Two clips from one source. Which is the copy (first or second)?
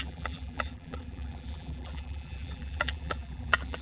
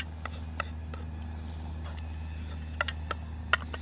first